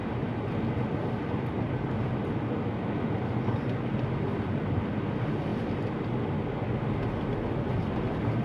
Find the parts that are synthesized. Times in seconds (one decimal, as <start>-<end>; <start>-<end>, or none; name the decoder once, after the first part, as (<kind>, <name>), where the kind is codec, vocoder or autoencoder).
none